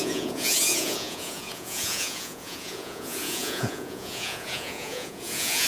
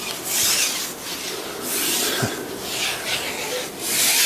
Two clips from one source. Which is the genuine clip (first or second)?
second